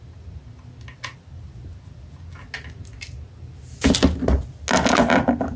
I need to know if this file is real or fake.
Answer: real